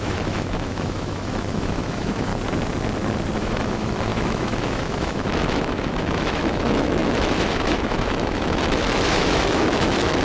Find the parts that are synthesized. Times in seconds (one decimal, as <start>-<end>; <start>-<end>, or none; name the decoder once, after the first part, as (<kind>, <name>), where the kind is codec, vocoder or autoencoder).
0.0-2.3 (autoencoder, DAC-VAE); 3.4-10.2